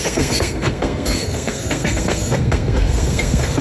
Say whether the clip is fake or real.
fake